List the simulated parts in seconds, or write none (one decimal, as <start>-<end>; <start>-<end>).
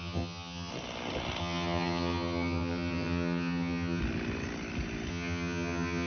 0.0-0.7; 1.4-4.0; 5.1-6.1